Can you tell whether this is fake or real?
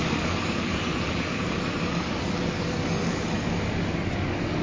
fake